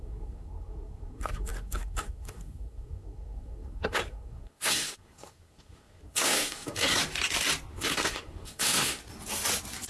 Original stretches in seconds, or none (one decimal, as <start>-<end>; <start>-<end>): 7.0-7.7; 9.0-9.9